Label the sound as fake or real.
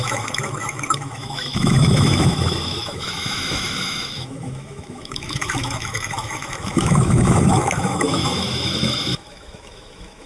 fake